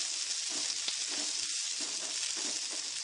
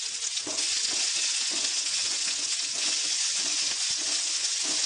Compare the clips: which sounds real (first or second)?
first